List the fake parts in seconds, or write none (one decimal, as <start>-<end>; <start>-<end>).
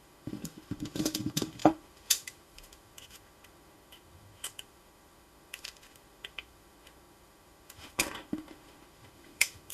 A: 0.0-9.7